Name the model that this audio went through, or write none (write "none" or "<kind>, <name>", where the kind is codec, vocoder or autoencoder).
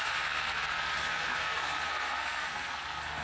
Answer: codec, SNAC